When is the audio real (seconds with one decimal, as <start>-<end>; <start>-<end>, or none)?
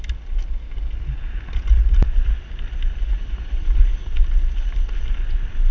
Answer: 0.0-5.7